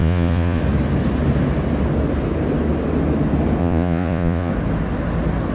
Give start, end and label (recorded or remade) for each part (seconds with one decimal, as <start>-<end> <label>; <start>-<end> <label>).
0.0-0.6 remade; 0.6-3.6 recorded; 3.6-4.5 remade; 4.5-5.5 recorded

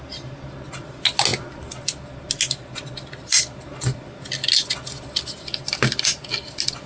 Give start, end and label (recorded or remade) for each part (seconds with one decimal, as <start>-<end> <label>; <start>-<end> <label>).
0.0-6.9 recorded

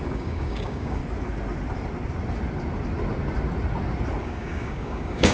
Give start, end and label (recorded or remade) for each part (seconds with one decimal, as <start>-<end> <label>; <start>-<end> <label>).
0.0-1.0 remade; 1.0-4.2 recorded; 4.2-5.3 remade

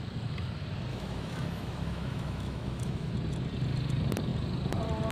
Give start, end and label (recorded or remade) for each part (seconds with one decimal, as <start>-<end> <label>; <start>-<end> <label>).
0.0-0.9 recorded; 0.9-3.1 remade; 3.1-5.1 recorded

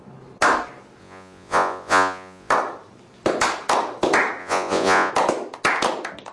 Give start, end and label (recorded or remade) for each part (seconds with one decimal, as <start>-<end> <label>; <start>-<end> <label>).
0.0-1.0 recorded; 1.0-2.5 remade; 2.5-4.4 recorded; 4.4-5.1 remade; 5.1-6.3 recorded

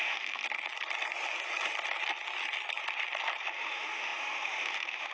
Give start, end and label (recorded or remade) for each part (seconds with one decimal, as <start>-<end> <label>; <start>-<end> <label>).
0.0-0.4 remade; 0.4-3.5 recorded; 3.5-5.1 remade

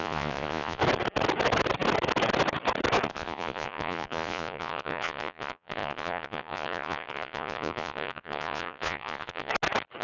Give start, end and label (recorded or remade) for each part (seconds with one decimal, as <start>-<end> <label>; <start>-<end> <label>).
0.0-0.8 remade; 0.8-3.1 recorded; 3.1-9.5 remade; 9.5-10.0 recorded

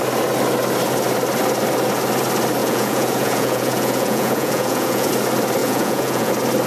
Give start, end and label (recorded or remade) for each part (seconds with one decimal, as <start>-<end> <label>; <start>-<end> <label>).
0.0-2.6 recorded; 2.6-5.1 remade; 5.1-5.6 recorded; 5.6-6.3 remade; 6.3-6.7 recorded